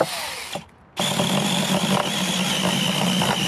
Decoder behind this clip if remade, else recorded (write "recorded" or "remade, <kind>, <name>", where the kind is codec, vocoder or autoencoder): recorded